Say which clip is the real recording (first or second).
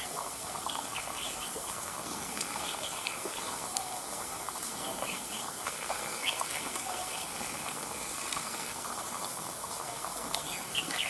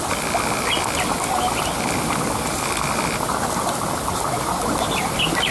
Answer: second